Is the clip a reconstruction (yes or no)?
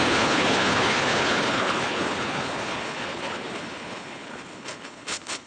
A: yes